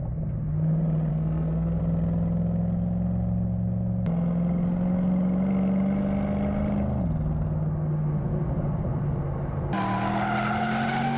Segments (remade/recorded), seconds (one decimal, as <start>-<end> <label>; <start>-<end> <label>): 0.0-1.1 recorded; 1.1-1.8 remade; 1.8-11.2 recorded